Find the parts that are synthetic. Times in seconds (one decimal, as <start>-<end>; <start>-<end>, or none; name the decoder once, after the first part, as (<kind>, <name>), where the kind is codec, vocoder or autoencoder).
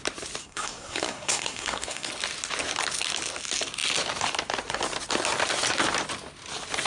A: 0.4-2.1 (codec, SNAC)